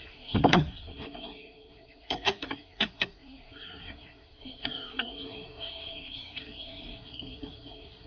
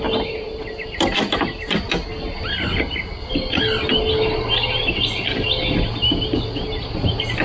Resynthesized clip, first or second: first